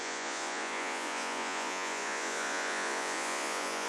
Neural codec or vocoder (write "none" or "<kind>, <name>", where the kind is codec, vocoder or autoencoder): vocoder, Vocos